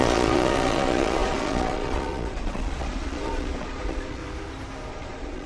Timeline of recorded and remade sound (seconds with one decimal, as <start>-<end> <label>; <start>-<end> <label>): 0.0-4.2 remade; 4.2-4.9 recorded; 4.9-5.5 remade